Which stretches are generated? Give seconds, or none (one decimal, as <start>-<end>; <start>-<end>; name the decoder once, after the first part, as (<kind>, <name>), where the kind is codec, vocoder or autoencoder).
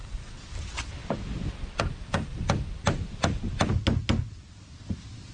0.0-0.6 (vocoder, BigVGAN v2); 1.0-3.8